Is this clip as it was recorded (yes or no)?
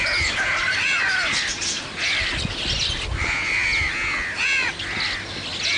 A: yes